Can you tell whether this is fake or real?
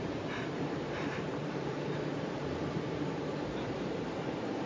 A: fake